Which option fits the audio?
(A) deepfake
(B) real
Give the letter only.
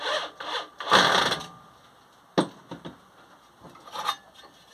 B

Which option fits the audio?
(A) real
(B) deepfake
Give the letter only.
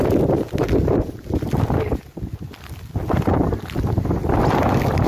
A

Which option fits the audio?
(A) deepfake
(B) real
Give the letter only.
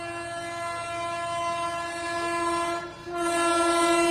B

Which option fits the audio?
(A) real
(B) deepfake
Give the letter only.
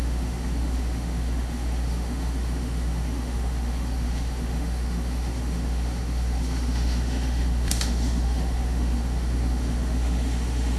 B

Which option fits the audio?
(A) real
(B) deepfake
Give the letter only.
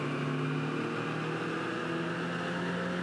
A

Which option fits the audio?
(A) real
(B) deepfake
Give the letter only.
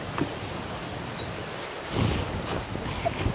A